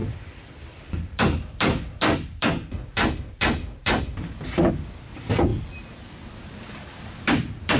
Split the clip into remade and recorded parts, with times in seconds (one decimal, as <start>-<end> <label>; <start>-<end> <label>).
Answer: 0.0-4.7 remade; 4.7-5.5 recorded; 5.5-7.8 remade